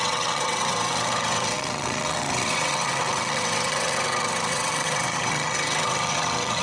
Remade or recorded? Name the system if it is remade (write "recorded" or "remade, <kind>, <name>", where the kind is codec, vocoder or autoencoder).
remade, vocoder, WaveNeXt